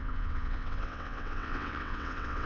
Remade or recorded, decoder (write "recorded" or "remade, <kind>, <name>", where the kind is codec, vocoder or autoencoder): remade, vocoder, WaveNeXt